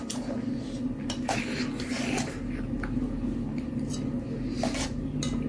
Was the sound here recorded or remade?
recorded